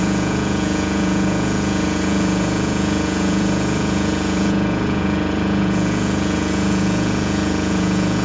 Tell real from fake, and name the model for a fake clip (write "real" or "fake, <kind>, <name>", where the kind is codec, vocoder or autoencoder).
fake, vocoder, Vocos